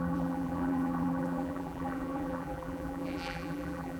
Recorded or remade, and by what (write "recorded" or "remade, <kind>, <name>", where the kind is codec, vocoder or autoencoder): remade, vocoder, BigVGAN v2